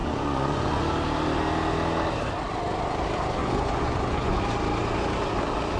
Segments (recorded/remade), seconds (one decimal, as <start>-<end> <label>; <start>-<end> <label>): 0.0-0.8 remade; 0.8-3.4 recorded; 3.4-4.4 remade; 4.4-5.8 recorded

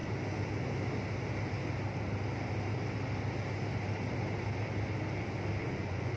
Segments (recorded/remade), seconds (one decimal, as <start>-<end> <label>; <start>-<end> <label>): 0.0-5.6 recorded; 5.6-6.2 remade

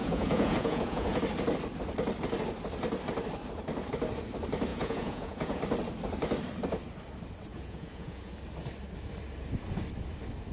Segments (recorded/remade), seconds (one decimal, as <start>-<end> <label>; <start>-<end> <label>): 0.0-1.2 remade; 1.2-4.7 recorded; 4.7-5.6 remade; 5.6-7.5 recorded; 7.5-8.3 remade; 8.3-10.5 recorded

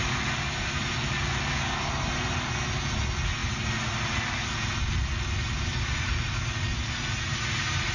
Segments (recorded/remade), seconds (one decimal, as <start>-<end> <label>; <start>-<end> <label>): 0.0-7.9 recorded

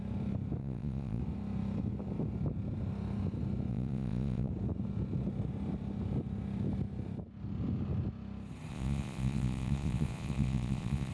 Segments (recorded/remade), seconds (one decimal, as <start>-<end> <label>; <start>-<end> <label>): 0.0-0.6 recorded; 0.6-1.2 remade; 1.2-3.7 recorded; 3.7-4.5 remade; 4.5-8.7 recorded; 8.7-11.1 remade

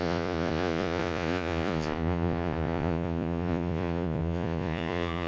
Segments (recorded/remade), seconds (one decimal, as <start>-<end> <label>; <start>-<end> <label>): 0.0-5.3 remade

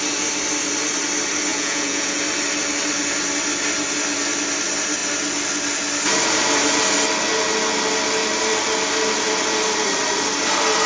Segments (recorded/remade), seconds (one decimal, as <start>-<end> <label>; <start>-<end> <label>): 0.0-1.5 recorded; 1.5-2.2 remade; 2.2-10.9 recorded